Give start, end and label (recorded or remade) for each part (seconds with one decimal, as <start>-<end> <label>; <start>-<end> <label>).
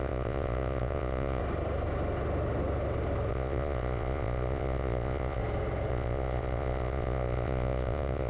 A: 0.0-1.4 remade; 1.4-3.3 recorded; 3.3-5.4 remade; 5.4-5.9 recorded; 5.9-8.3 remade